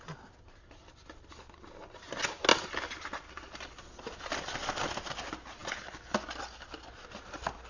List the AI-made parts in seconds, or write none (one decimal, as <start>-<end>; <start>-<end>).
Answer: none